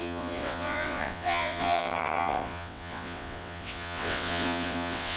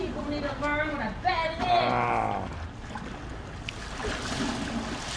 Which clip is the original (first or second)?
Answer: second